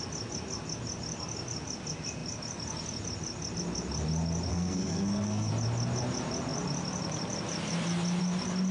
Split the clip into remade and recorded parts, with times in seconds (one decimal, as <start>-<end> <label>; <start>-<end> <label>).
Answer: 0.0-4.5 recorded; 4.5-5.5 remade; 5.5-8.7 recorded